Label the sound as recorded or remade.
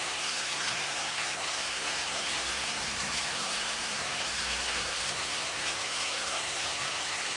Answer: remade